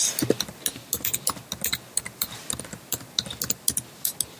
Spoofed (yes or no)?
no